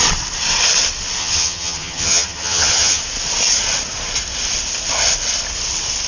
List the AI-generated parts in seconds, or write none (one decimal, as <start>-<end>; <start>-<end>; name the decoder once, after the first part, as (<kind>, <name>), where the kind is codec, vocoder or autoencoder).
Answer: 1.2-3.0 (vocoder, HiFi-GAN)